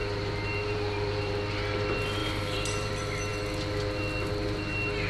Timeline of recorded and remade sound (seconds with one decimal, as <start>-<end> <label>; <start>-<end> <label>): 0.0-1.4 remade; 1.4-2.2 recorded; 2.2-2.9 remade; 2.9-5.1 recorded